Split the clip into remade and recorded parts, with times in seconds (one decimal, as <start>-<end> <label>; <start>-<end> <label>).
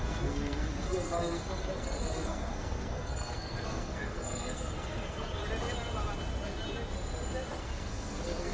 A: 0.0-5.4 remade; 5.4-7.6 recorded; 7.6-8.5 remade